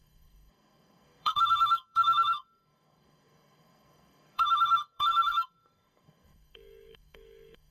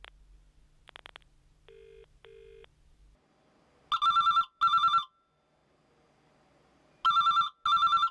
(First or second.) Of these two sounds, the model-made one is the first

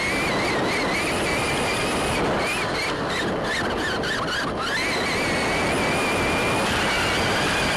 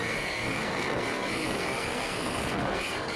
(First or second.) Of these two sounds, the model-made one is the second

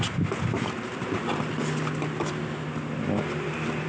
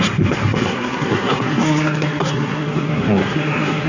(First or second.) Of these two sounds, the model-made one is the second